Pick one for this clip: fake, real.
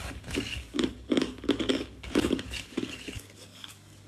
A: fake